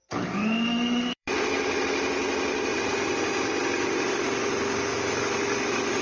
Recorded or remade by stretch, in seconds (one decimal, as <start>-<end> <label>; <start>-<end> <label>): 0.0-0.7 recorded; 0.7-1.8 remade; 1.8-4.9 recorded; 4.9-6.0 remade